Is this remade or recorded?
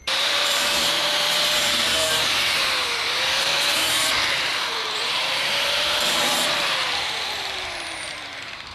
remade